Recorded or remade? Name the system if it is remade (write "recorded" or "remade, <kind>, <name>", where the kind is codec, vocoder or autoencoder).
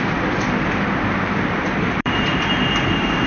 remade, vocoder, BigVGAN v2